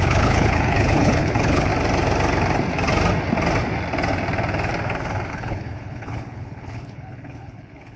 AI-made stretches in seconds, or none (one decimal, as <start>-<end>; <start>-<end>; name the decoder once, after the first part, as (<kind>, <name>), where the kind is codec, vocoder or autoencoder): 0.0-1.7 (codec, HILCodec); 5.3-8.0